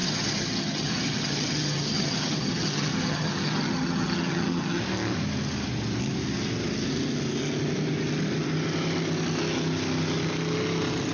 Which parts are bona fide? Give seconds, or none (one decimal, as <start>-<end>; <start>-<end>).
4.8-11.1